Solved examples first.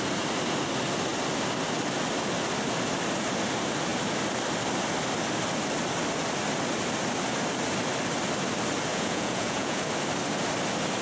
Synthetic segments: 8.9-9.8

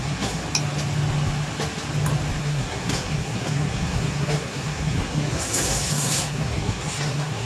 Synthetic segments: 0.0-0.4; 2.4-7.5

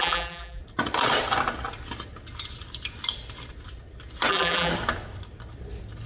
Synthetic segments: 0.0-0.6; 4.3-4.7

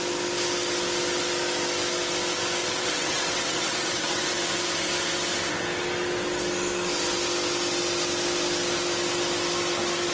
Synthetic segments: 2.6-4.3